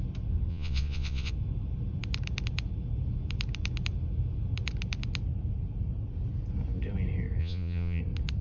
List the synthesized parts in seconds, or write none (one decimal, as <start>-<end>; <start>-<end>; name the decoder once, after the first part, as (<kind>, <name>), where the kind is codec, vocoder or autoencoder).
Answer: 0.5-1.3 (vocoder, Vocos); 7.4-8.0